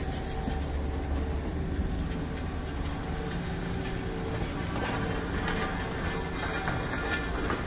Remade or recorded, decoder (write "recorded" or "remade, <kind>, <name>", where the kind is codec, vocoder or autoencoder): recorded